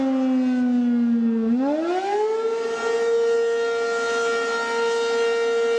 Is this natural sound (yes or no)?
yes